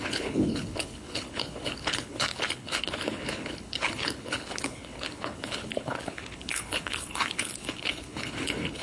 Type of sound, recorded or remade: remade